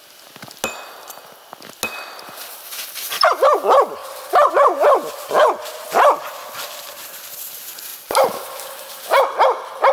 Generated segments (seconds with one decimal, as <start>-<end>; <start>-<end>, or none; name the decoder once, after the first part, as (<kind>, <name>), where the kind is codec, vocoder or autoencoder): 4.0-4.5 (vocoder, BigVGAN v2)